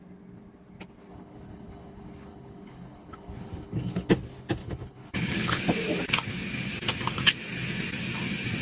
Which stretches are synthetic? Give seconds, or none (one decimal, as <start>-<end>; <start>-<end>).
1.1-4.1; 4.6-5.6